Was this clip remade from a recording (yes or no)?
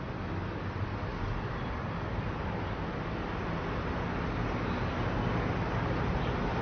no